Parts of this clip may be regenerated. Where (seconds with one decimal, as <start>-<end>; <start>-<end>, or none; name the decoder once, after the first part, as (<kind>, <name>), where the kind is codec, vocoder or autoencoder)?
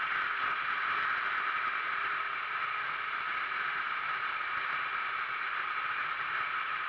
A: 0.0-2.3 (vocoder, BigVGAN v2); 5.5-6.9